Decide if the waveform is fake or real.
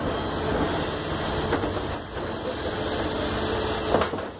real